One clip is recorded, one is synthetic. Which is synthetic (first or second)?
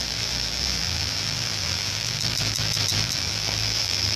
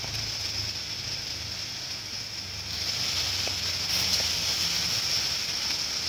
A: first